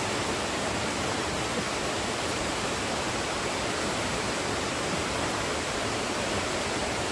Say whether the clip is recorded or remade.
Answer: remade